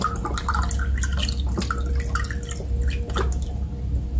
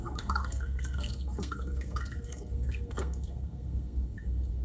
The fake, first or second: second